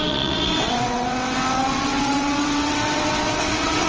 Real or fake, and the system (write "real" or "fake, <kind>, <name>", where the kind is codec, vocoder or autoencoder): fake, vocoder, WaveNeXt